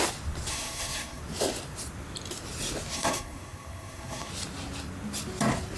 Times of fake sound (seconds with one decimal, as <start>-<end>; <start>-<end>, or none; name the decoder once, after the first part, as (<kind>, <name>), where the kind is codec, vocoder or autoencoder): 0.5-1.2 (codec, SNAC); 2.9-4.3